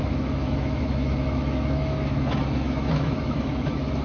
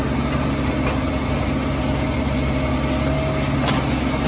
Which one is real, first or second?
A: second